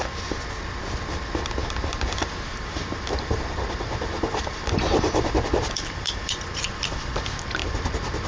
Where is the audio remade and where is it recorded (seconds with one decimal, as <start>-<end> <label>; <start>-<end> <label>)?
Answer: 0.0-1.6 recorded; 1.6-6.4 remade; 6.4-7.6 recorded; 7.6-8.3 remade